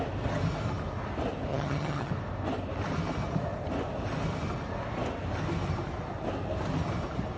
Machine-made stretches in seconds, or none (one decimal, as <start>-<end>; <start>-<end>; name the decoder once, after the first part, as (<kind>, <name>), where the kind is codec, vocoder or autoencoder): 1.5-2.1 (vocoder, HiFi-GAN)